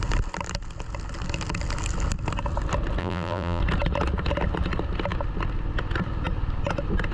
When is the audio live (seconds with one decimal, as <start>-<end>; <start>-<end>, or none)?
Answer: 0.0-3.0; 3.6-7.1